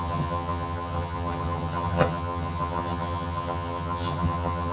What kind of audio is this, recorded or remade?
remade